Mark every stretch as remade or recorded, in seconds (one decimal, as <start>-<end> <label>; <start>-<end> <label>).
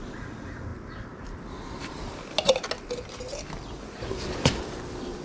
0.0-5.2 recorded